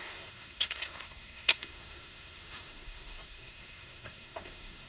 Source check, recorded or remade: remade